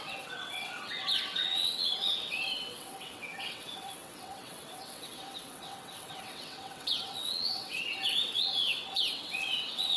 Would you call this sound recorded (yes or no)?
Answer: no